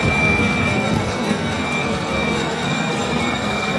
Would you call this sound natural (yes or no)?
no